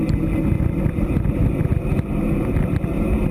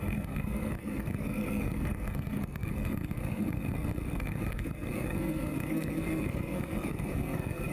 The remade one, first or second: second